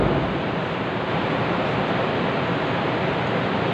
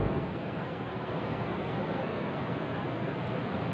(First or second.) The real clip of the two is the first